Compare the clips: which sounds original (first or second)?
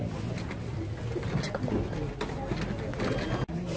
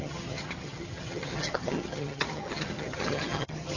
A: first